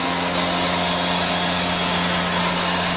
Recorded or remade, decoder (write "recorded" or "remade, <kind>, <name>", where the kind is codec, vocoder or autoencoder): recorded